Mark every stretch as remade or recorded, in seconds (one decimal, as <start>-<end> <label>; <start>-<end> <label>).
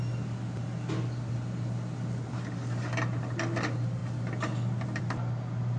0.0-5.8 recorded